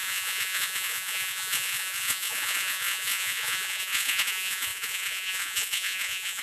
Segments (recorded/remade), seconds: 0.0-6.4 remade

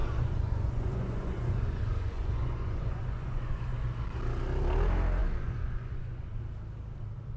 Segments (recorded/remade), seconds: 0.0-3.7 remade; 3.7-5.2 recorded; 5.2-6.4 remade; 6.4-7.4 recorded

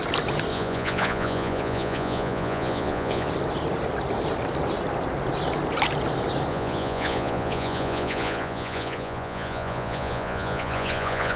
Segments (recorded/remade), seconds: 0.0-0.5 recorded; 0.5-3.3 remade; 3.3-6.5 recorded; 6.5-11.4 remade

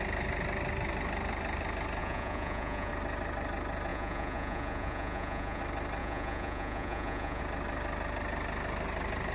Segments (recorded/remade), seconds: 0.0-2.0 recorded; 2.0-2.9 remade; 2.9-3.9 recorded; 3.9-5.6 remade; 5.6-6.0 recorded; 6.0-7.4 remade; 7.4-9.3 recorded

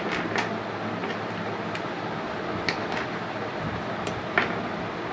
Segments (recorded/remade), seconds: 0.0-5.1 recorded

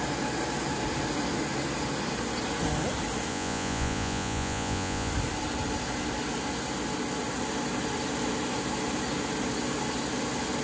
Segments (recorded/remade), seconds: 0.0-3.3 recorded; 3.3-5.1 remade; 5.1-10.6 recorded

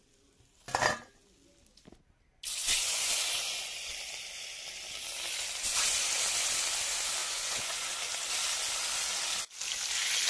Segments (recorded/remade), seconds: 0.0-2.6 recorded; 2.6-3.9 remade; 3.9-7.2 recorded; 7.2-7.9 remade; 7.9-10.3 recorded

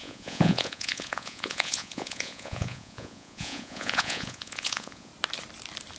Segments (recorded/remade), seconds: 0.0-5.1 remade; 5.1-6.0 recorded